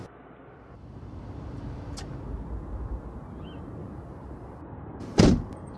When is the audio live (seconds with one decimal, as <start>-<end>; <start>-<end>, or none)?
1.2-3.8